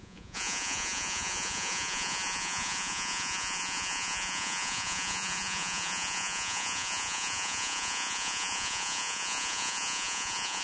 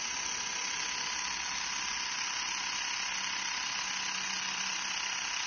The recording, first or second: second